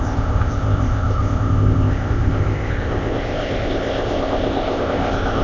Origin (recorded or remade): remade